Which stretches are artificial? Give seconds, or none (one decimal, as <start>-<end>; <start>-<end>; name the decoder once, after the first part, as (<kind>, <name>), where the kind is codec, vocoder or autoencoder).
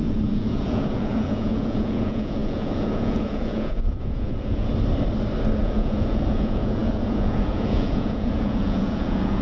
0.0-4.7 (vocoder, Vocos); 5.6-9.4